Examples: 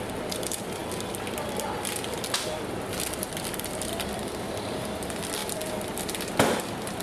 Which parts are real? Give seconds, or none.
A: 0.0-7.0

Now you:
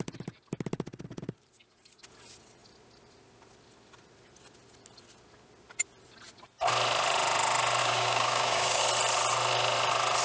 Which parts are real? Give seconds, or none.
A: 0.0-7.8; 8.8-10.2

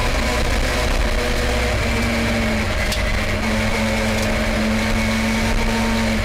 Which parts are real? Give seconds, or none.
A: 0.0-6.2

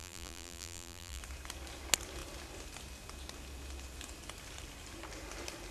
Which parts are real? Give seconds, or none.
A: 1.2-5.7

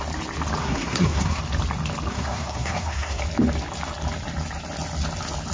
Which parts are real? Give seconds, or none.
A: 0.0-0.6; 1.4-2.1; 3.2-5.5

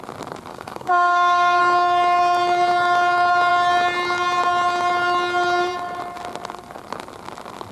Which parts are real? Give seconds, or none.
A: 0.0-0.5; 1.6-7.7